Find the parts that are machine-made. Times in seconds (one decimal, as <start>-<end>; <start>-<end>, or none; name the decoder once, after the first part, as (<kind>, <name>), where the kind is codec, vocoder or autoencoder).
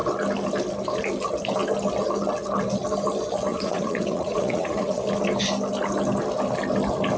3.5-5.0 (vocoder, Vocos)